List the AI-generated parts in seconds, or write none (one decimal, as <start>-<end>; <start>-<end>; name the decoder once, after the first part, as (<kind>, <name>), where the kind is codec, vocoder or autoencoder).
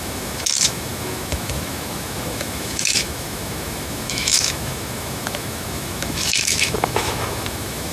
0.0-7.9 (autoencoder, DAC-VAE)